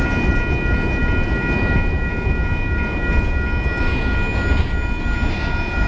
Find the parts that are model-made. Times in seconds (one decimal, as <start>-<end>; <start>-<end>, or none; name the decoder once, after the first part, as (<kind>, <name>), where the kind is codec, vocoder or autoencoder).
none